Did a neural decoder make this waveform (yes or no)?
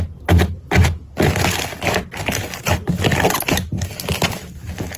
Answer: no